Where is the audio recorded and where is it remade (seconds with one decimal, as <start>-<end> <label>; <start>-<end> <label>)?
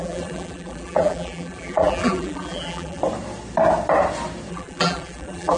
0.0-3.0 remade; 3.0-4.5 recorded; 4.5-5.6 remade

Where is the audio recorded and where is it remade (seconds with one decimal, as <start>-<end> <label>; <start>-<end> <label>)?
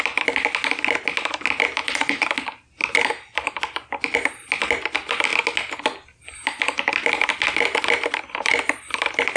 0.0-1.8 recorded; 1.8-2.3 remade; 2.3-9.4 recorded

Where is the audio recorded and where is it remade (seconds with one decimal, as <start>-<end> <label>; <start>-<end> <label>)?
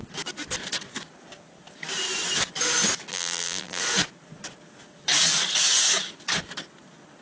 0.0-3.1 recorded; 3.1-3.8 remade; 3.8-7.2 recorded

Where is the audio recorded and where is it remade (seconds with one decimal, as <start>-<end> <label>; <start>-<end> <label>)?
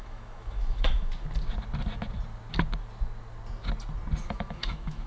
0.0-1.1 remade; 1.1-4.2 recorded; 4.2-5.1 remade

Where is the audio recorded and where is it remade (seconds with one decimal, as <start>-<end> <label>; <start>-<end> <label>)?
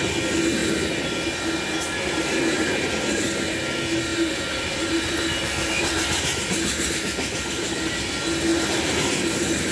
0.0-4.1 recorded; 4.1-6.9 remade; 6.9-8.5 recorded; 8.5-9.7 remade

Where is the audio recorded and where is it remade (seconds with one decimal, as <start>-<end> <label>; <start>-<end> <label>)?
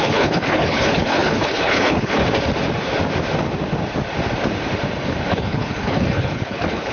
0.0-2.2 remade; 2.2-5.3 recorded; 5.3-6.9 remade